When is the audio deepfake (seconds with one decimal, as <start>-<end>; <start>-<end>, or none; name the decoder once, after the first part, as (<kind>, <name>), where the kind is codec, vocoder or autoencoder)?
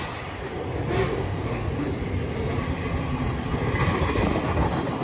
1.0-1.7 (codec, DAC)